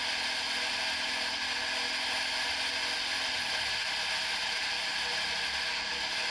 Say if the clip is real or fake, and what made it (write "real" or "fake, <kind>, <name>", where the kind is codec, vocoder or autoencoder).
real